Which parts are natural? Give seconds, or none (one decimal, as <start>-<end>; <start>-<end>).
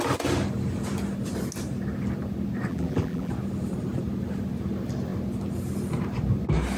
0.0-2.7; 3.3-6.8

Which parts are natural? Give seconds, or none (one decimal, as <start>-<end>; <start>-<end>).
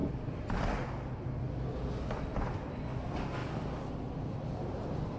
0.0-5.2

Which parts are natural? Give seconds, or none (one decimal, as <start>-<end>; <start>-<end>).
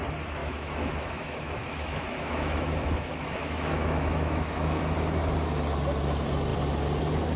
0.0-0.4; 4.8-7.4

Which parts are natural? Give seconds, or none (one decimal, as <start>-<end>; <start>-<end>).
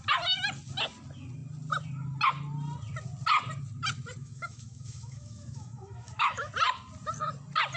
0.0-4.2; 6.5-7.8